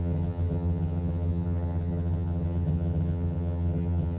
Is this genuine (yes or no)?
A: no